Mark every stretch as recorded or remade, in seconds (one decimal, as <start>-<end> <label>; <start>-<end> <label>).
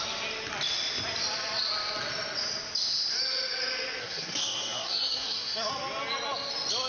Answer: 0.0-4.0 recorded; 4.0-5.7 remade; 5.7-6.9 recorded